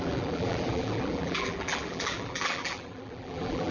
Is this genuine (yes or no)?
no